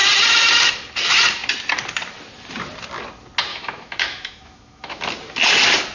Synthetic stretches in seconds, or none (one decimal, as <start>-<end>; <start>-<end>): 3.5-5.0